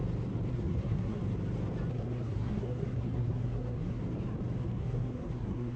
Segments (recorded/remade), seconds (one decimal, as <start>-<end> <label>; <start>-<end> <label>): 0.0-0.5 recorded; 0.5-1.2 remade; 1.2-1.9 recorded; 1.9-4.0 remade; 4.0-4.6 recorded; 4.6-5.8 remade